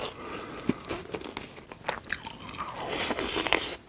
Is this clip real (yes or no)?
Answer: yes